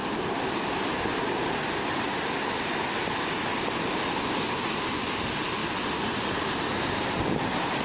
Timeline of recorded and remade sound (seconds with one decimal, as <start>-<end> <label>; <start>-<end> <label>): 0.0-7.8 recorded